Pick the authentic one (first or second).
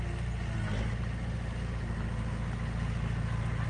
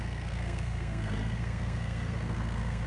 first